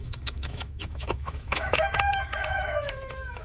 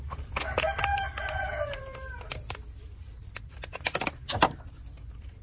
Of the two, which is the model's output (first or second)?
first